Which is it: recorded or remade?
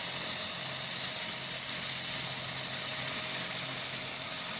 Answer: recorded